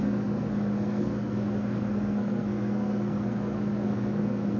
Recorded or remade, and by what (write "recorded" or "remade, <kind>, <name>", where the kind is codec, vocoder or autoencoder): remade, codec, SNAC